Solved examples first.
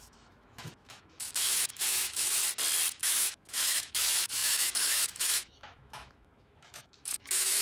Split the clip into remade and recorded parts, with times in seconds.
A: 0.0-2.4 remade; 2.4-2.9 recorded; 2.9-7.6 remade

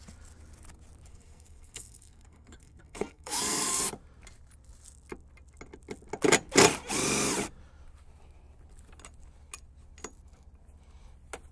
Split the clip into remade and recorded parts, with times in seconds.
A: 0.0-1.1 recorded; 1.1-3.8 remade; 3.8-11.5 recorded

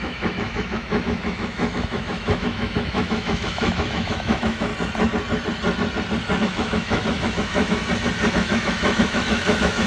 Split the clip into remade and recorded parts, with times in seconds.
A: 0.0-4.7 remade; 4.7-6.4 recorded; 6.4-7.8 remade; 7.8-8.3 recorded; 8.3-9.9 remade

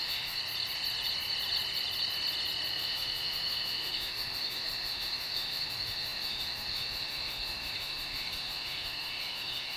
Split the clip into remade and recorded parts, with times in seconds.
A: 0.0-0.4 remade; 0.4-2.7 recorded; 2.7-9.8 remade